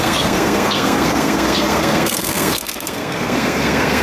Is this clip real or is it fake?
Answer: fake